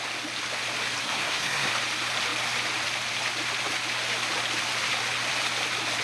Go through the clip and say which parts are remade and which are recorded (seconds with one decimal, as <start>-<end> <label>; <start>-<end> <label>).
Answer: 0.0-1.0 recorded; 1.0-1.7 remade; 1.7-6.0 recorded